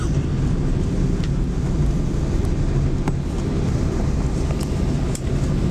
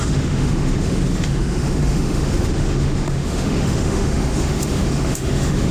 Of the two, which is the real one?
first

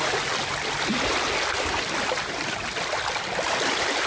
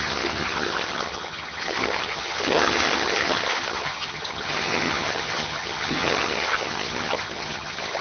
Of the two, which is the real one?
first